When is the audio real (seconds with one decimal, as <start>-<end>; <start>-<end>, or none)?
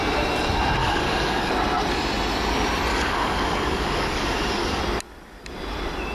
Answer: 0.0-0.8; 1.5-2.9; 4.8-6.1